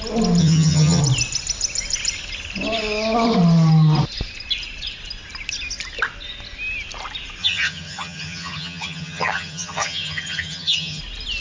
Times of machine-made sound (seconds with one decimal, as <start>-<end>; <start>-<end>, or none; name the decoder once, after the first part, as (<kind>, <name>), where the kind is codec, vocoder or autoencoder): 0.4-1.0 (vocoder, HiFi-GAN); 7.4-11.0